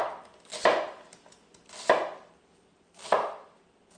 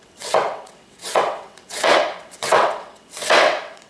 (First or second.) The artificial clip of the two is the second